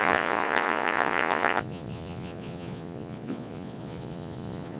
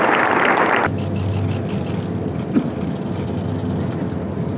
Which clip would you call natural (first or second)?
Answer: second